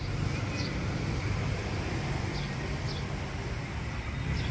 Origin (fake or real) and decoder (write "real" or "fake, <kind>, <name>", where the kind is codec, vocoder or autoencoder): real